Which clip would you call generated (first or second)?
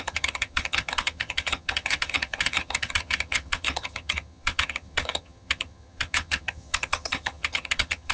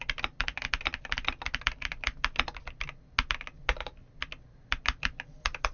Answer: first